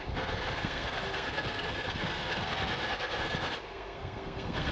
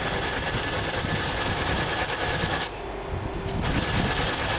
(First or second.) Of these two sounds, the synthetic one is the first